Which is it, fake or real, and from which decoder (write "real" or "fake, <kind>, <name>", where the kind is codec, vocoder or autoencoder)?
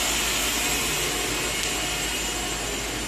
real